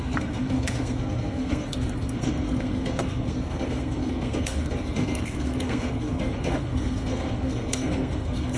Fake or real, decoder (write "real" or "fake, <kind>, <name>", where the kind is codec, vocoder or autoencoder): fake, codec, SNAC